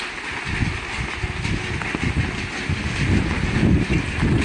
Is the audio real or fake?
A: real